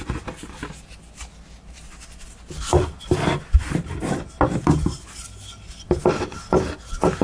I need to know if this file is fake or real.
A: real